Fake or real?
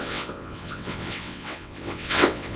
fake